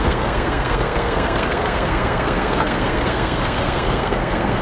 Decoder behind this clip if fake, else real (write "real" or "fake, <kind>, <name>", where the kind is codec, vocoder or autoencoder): fake, codec, SNAC